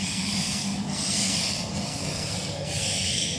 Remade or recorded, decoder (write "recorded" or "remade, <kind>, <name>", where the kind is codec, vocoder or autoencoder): remade, codec, SNAC